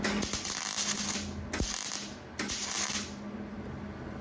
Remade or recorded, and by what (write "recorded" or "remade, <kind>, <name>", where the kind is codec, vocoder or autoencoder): recorded